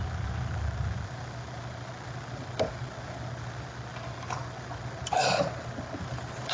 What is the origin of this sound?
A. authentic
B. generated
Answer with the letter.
A